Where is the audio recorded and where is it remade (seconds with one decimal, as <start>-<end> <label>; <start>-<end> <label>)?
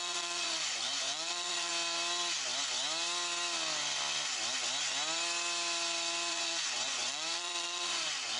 0.0-1.7 remade; 1.7-6.3 recorded; 6.3-8.4 remade